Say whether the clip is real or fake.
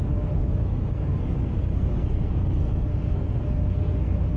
fake